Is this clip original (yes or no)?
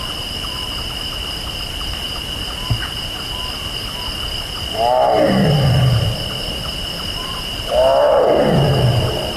yes